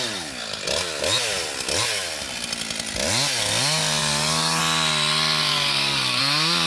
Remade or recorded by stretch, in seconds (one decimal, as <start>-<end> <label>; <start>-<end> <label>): 0.0-4.0 recorded; 4.0-4.6 remade; 4.6-5.5 recorded; 5.5-6.2 remade; 6.2-6.7 recorded